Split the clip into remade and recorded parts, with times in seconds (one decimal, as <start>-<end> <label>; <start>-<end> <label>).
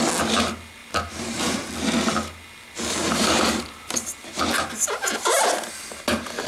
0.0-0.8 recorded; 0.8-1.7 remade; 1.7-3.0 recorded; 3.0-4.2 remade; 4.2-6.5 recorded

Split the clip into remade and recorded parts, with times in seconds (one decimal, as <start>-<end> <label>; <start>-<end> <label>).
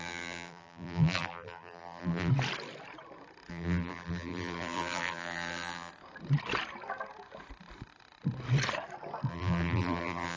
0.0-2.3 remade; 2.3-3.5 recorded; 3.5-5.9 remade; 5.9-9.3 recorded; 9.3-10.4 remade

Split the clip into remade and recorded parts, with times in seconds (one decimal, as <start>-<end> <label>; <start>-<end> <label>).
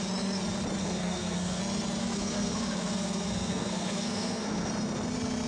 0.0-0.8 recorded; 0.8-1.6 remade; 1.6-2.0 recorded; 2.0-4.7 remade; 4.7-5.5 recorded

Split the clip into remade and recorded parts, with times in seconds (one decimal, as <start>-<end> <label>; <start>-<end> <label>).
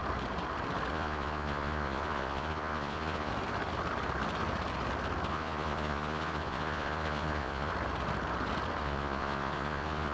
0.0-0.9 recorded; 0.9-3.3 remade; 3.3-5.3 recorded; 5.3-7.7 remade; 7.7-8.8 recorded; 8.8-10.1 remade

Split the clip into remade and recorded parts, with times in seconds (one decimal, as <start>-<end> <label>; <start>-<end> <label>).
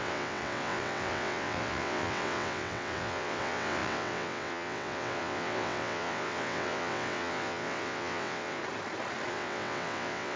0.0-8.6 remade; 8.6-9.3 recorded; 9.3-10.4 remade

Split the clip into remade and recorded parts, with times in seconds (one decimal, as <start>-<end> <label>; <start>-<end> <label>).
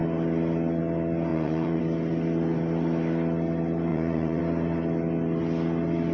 0.0-1.3 recorded; 1.3-1.8 remade; 1.8-3.9 recorded; 3.9-4.4 remade; 4.4-6.1 recorded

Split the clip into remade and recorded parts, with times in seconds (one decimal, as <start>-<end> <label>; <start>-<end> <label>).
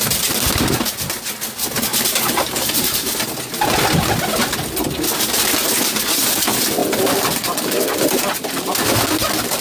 0.0-1.9 recorded; 1.9-3.1 remade; 3.1-9.6 recorded